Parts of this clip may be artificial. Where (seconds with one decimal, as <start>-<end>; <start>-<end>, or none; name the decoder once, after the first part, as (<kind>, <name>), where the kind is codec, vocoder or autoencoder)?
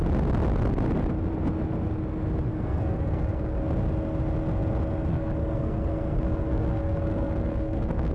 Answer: 2.5-3.6 (codec, SNAC); 5.1-8.1